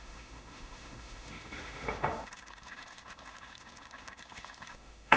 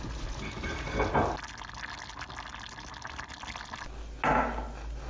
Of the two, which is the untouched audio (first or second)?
second